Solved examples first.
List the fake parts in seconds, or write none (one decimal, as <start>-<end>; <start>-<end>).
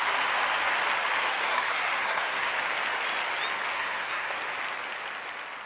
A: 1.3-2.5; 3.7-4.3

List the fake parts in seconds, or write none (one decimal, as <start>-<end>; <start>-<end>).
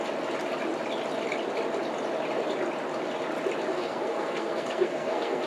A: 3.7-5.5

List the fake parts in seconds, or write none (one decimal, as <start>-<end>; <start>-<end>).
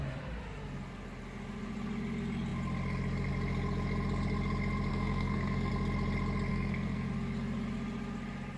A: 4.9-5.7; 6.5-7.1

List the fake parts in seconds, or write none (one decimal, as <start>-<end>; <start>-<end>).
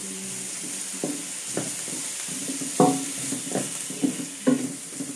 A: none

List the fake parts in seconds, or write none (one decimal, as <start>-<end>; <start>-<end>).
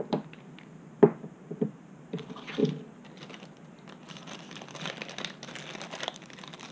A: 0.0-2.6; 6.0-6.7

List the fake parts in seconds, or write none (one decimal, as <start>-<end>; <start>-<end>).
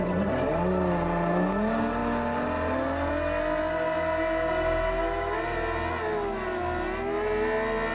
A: none